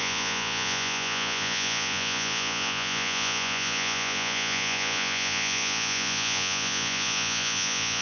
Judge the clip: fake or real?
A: fake